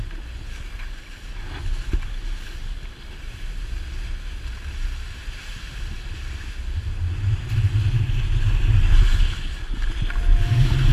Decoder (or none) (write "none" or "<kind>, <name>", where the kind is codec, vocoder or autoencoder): none